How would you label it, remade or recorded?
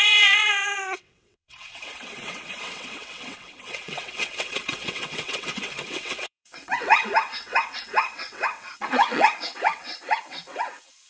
remade